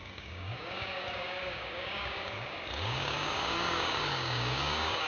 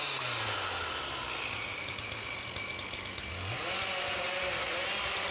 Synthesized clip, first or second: first